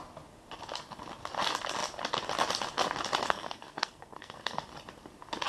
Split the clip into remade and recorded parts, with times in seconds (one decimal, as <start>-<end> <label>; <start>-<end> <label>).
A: 0.0-3.2 recorded; 3.2-4.6 remade; 4.6-5.5 recorded